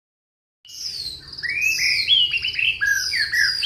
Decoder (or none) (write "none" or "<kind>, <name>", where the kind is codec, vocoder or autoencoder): none